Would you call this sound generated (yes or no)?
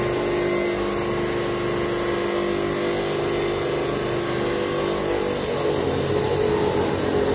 no